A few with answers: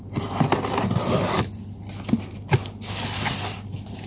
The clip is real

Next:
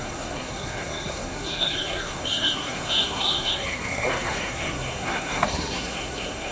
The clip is fake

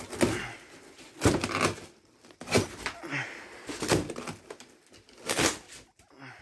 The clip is real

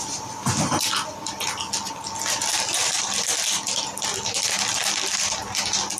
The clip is real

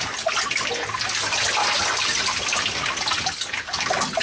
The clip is real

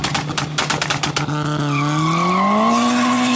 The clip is real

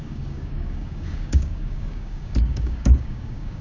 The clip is fake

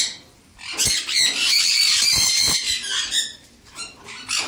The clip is real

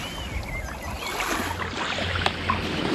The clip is real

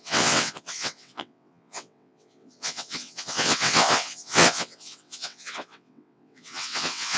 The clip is fake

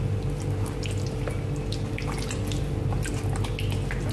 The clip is real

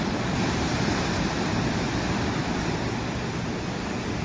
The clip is real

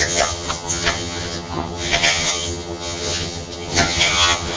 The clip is fake